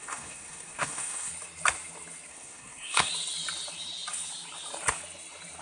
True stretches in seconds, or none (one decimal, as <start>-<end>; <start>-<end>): 1.3-2.3; 3.1-5.6